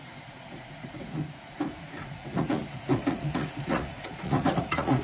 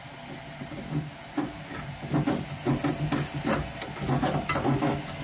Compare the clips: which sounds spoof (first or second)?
first